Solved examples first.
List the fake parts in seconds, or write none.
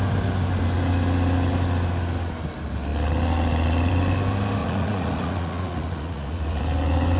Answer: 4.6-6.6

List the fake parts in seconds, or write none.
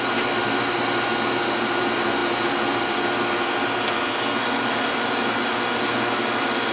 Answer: none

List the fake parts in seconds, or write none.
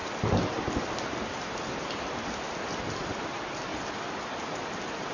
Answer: none